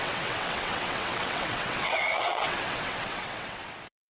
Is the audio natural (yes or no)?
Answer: no